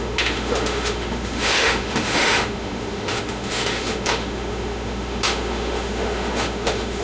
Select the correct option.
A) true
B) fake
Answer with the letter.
B